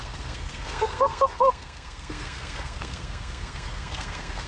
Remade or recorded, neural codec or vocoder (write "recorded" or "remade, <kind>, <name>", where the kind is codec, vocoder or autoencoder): remade, codec, SNAC